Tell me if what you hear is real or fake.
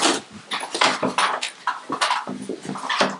real